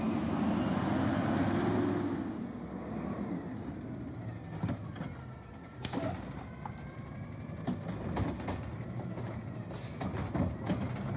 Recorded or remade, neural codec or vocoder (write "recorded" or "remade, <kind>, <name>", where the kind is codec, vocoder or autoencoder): recorded